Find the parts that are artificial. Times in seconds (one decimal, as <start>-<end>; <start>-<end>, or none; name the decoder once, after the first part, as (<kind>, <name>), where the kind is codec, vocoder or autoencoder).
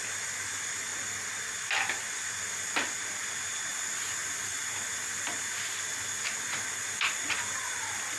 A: none